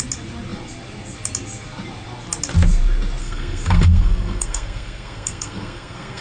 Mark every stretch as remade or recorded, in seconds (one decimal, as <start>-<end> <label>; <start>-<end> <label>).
0.0-3.2 recorded; 3.2-6.2 remade